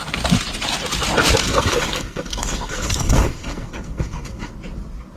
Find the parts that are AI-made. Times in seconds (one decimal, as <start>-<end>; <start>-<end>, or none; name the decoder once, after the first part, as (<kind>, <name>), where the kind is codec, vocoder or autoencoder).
1.4-4.5 (codec, SNAC)